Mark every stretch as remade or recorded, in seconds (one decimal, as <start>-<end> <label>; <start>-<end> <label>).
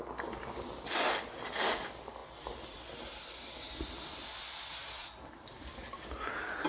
0.0-6.7 recorded